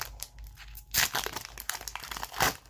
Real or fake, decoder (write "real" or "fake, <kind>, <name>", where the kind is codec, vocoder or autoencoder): real